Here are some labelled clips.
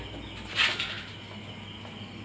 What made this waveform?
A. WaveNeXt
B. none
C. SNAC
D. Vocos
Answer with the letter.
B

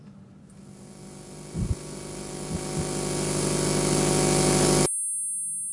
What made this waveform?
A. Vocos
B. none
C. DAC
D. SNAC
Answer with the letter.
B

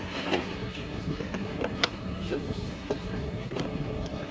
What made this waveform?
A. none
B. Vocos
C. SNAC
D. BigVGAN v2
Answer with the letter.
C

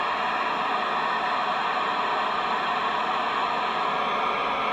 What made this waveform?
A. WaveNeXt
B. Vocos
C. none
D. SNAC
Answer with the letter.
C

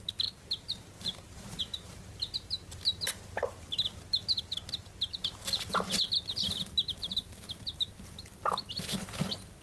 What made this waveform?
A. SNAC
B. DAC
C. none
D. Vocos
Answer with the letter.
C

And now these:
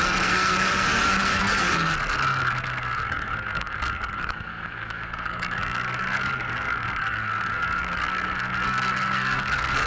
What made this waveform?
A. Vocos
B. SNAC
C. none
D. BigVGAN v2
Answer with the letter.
B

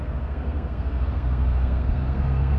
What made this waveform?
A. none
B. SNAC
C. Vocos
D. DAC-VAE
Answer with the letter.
B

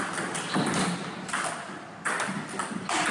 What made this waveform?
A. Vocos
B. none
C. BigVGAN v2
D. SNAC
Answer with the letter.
B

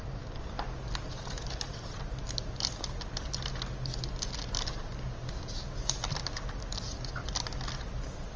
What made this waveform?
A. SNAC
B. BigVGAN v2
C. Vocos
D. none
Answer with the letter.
D